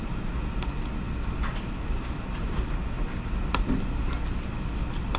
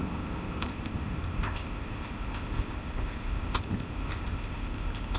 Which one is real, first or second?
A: first